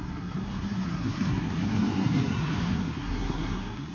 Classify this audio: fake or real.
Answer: fake